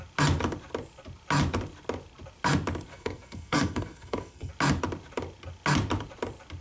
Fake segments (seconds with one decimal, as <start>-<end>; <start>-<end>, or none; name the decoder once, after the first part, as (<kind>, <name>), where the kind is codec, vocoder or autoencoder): 2.9-4.5 (codec, SNAC)